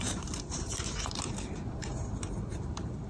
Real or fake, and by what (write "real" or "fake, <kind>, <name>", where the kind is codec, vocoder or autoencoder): fake, vocoder, BigVGAN v2